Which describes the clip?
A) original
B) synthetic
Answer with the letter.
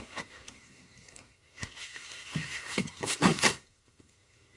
B